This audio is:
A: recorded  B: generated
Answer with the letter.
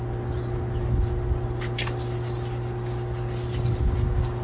A